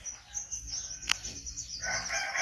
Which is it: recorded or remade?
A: recorded